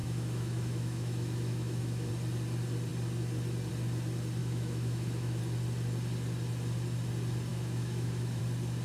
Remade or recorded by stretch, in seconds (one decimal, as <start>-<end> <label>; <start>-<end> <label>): 0.0-2.1 remade; 2.1-4.4 recorded; 4.4-5.4 remade; 5.4-7.5 recorded; 7.5-8.4 remade; 8.4-8.8 recorded

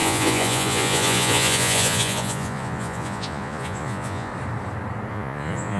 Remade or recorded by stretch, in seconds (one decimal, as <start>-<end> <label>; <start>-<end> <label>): 0.0-4.3 remade; 4.3-5.1 recorded; 5.1-5.8 remade

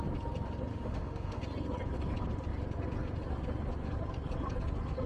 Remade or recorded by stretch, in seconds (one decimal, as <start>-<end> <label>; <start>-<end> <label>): 0.0-0.7 recorded; 0.7-1.4 remade; 1.4-5.1 recorded

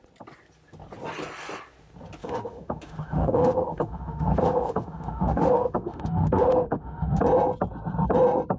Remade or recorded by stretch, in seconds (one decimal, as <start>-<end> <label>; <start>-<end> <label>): 0.0-2.2 recorded; 2.2-7.2 remade; 7.2-8.6 recorded

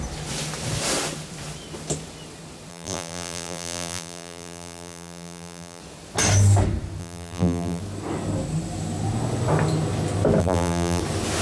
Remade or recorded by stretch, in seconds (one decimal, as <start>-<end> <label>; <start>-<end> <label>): 0.0-2.7 recorded; 2.7-5.8 remade; 5.8-7.0 recorded; 7.0-7.8 remade; 7.8-10.4 recorded; 10.4-11.0 remade; 11.0-11.4 recorded

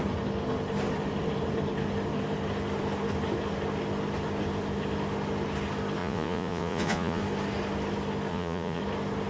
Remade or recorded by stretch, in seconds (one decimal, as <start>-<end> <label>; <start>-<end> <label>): 0.0-6.0 recorded; 6.0-7.2 remade; 7.2-8.3 recorded; 8.3-8.8 remade; 8.8-9.3 recorded